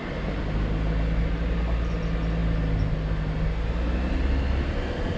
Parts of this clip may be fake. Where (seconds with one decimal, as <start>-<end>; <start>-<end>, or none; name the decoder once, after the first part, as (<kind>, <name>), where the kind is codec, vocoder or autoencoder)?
none